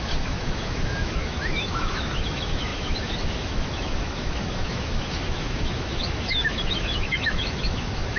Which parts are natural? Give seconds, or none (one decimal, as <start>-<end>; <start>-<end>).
none